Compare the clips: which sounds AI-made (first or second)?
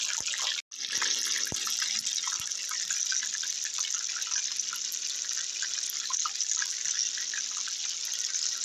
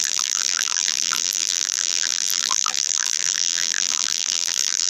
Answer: second